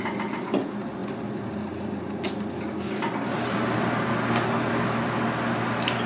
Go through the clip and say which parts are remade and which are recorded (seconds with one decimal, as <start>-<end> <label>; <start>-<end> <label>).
0.0-6.1 recorded